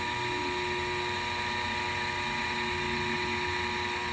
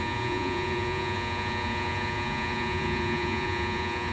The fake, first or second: second